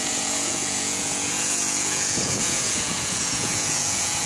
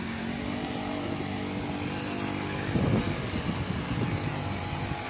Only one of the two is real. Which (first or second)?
second